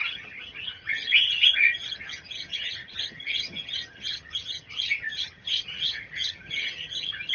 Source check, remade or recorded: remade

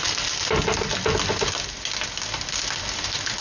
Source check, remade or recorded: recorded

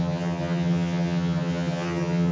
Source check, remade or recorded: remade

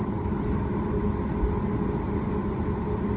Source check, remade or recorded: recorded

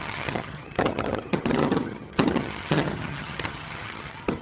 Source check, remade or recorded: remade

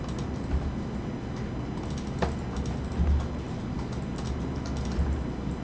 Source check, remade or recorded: recorded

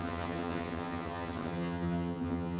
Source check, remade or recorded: remade